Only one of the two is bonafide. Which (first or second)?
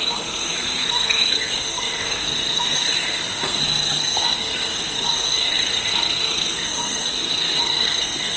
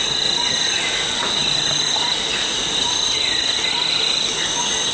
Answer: second